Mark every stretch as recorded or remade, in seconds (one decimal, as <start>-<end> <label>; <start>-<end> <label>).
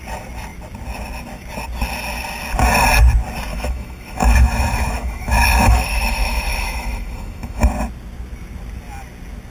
0.0-3.5 recorded; 3.5-7.7 remade; 7.7-9.5 recorded